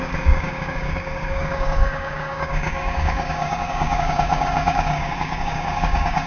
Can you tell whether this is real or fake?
fake